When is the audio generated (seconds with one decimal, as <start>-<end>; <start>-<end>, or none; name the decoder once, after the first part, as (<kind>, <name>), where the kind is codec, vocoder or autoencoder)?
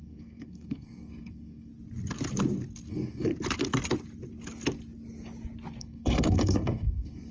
0.0-1.7 (codec, SNAC); 2.9-3.3; 5.8-7.3